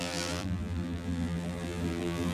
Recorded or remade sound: remade